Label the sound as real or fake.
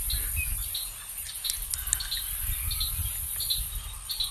real